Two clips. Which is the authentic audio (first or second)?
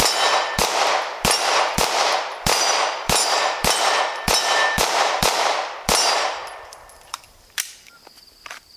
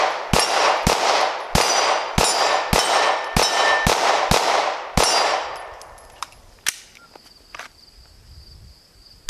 second